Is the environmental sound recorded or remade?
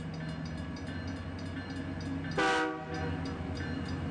recorded